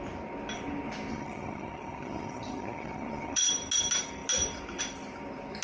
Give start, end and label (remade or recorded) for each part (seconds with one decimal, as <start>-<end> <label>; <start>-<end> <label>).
0.0-1.1 recorded; 1.1-3.5 remade; 3.5-5.6 recorded